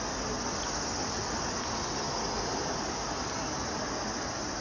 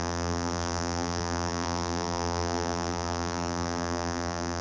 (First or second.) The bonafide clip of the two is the first